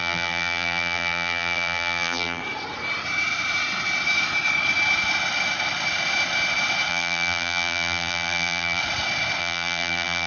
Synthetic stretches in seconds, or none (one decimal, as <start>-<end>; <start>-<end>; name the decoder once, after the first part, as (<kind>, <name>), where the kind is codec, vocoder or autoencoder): 0.0-2.4 (vocoder, BigVGAN v2); 6.9-8.8; 9.4-10.3